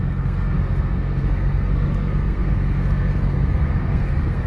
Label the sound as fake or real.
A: fake